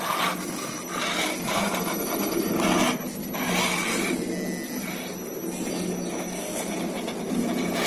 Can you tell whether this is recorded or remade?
recorded